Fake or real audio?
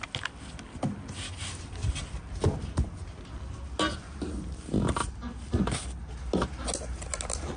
real